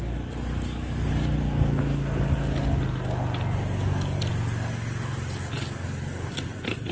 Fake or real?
real